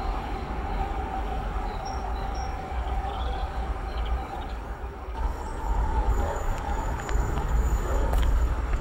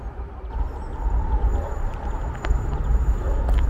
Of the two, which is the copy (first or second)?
first